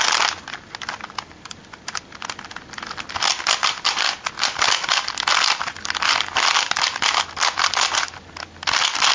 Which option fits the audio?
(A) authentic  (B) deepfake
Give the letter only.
A